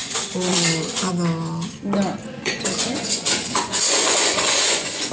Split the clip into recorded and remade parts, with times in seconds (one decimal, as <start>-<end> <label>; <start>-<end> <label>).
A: 0.0-1.1 remade; 1.1-2.2 recorded; 2.2-5.1 remade